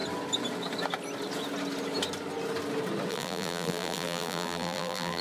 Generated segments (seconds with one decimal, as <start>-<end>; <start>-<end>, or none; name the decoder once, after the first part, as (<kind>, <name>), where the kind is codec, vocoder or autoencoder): 3.1-5.2 (vocoder, BigVGAN v2)